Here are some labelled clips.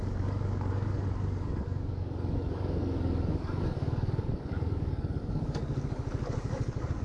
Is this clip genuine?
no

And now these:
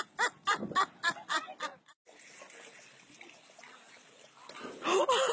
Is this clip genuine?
yes